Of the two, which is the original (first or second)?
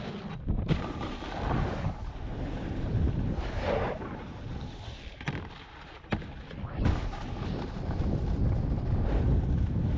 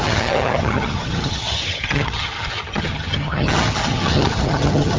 first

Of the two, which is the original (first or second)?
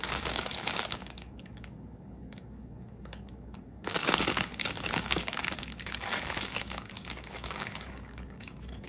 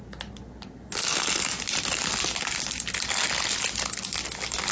second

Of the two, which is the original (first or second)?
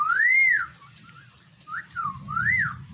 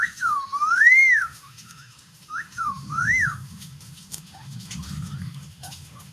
first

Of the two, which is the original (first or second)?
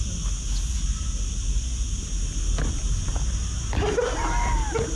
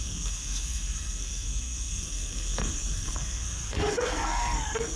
first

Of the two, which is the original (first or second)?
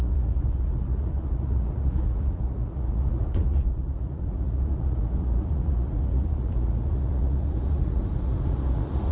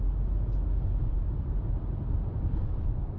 second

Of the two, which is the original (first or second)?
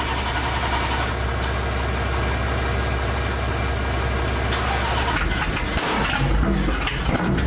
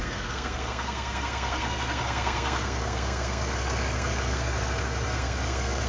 first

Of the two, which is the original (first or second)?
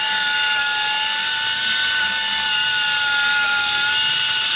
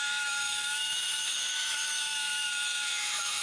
first